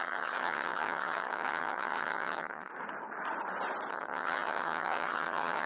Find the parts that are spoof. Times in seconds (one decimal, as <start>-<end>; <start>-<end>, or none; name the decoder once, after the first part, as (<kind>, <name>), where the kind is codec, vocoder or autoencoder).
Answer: 0.0-2.7 (vocoder, HiFi-GAN); 3.9-5.7